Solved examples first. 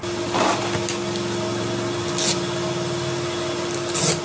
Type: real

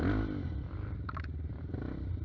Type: fake